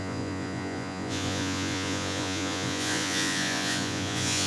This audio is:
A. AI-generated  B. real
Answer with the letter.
A